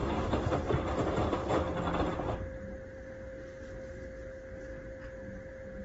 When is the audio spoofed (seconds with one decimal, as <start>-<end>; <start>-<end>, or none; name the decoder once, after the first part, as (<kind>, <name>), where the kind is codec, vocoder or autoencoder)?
0.0-0.8 (vocoder, BigVGAN v2)